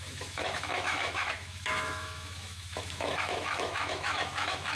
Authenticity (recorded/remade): remade